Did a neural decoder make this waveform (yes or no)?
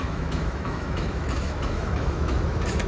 yes